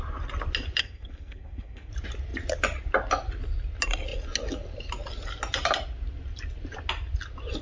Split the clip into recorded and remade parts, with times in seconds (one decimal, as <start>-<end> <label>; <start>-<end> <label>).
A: 0.0-0.8 recorded; 0.8-1.9 remade; 1.9-7.6 recorded